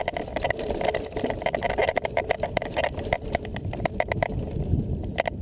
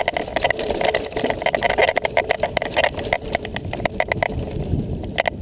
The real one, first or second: second